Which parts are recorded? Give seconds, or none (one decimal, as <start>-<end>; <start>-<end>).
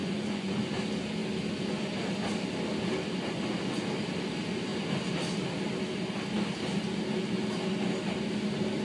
0.6-8.8